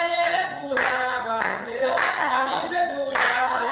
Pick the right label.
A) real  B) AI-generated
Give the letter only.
B